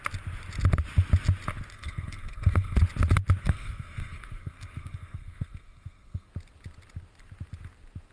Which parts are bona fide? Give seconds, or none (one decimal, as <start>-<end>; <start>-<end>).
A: 0.0-1.7; 2.8-3.4; 6.3-8.1